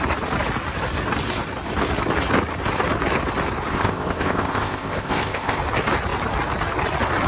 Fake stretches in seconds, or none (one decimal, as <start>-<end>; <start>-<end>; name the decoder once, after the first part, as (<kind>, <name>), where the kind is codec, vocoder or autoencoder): 3.7-5.6 (codec, ZipCodec)